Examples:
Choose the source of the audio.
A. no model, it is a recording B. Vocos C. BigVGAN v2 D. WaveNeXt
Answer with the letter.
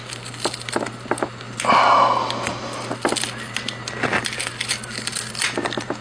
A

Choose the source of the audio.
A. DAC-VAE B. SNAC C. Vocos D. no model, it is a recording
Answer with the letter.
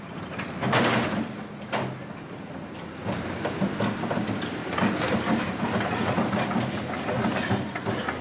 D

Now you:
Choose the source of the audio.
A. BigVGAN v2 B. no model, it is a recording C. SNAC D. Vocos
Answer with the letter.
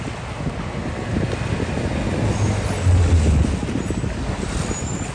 B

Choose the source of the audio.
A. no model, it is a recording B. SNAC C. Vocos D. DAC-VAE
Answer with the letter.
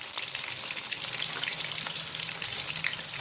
A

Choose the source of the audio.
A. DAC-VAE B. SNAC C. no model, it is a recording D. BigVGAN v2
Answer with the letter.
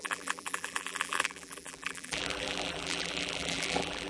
D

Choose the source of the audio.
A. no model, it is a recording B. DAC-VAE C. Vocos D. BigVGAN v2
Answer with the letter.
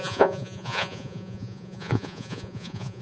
C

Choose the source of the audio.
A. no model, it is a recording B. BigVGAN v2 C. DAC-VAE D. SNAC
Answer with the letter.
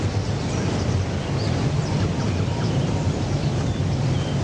B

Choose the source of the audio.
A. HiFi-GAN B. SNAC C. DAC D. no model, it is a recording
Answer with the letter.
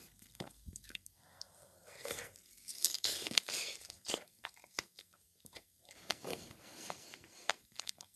B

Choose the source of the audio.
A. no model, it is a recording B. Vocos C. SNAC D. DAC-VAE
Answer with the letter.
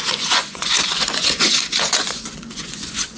B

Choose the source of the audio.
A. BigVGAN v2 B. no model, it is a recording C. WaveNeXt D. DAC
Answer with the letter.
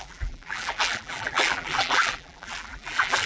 A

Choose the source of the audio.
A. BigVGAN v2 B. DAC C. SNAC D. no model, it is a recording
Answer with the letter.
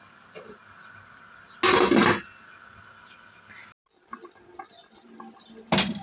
D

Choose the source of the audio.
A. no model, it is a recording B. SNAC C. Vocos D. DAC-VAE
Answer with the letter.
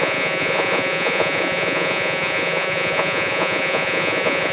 C